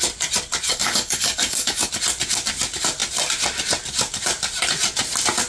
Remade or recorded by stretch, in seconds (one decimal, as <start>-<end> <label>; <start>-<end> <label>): 0.0-0.7 recorded; 0.7-1.9 remade; 1.9-5.5 recorded